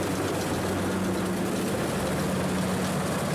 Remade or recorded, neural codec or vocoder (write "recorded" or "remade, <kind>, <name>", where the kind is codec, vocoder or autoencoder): recorded